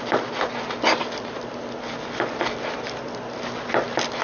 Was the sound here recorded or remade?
recorded